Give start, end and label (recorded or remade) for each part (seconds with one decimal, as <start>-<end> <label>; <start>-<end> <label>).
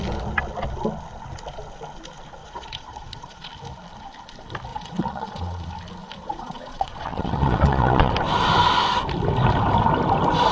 0.0-2.4 recorded; 2.4-3.5 remade; 3.5-4.7 recorded; 4.7-5.7 remade; 5.7-6.2 recorded; 6.2-8.1 remade; 8.1-10.5 recorded